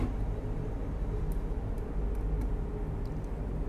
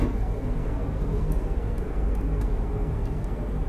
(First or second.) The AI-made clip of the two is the second